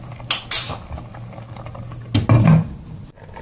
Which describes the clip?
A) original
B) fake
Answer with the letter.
A